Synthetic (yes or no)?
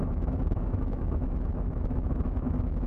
yes